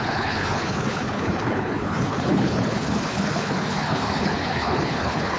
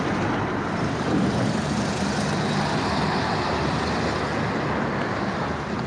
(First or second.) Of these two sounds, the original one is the second